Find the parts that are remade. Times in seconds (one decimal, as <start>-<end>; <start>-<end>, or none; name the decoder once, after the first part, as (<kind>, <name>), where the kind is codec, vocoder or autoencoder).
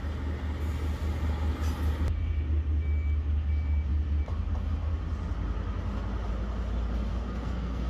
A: 7.1-7.9 (codec, SNAC)